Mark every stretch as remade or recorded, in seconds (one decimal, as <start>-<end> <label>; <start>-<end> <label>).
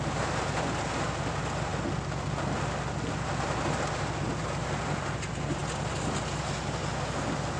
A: 0.0-7.6 recorded